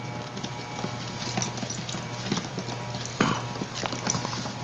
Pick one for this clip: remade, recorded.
recorded